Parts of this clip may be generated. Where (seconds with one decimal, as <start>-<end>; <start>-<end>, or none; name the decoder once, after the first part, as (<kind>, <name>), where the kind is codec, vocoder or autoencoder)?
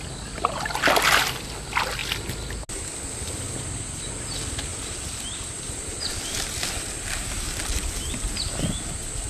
4.7-8.0 (vocoder, BigVGAN v2)